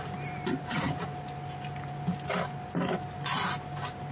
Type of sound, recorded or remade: recorded